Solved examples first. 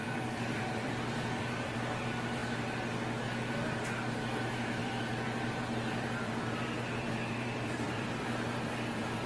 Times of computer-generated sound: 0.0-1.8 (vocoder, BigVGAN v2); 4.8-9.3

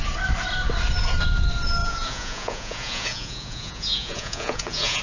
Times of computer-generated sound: 1.8-5.0 (vocoder, Vocos)

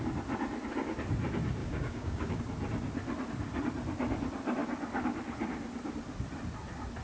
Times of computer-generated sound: 1.6-2.4 (codec, DAC)

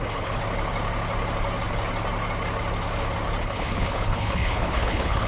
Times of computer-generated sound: 0.0-0.4 (codec, HILCodec); 3.4-5.3

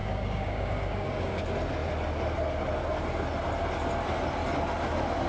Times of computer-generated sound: 0.0-1.4 (codec, DAC)

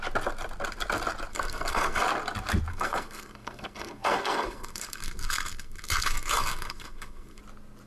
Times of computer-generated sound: 1.3-2.0 (codec, SNAC); 2.7-7.4

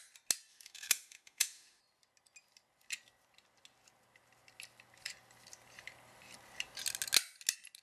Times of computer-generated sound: 0.5-1.8 (autoencoder, DAC-VAE)